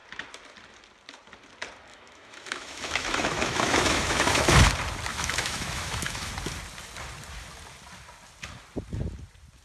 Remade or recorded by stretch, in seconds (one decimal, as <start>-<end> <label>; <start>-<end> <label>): 0.0-1.9 recorded; 1.9-4.4 remade; 4.4-5.1 recorded; 5.1-6.3 remade; 6.3-9.6 recorded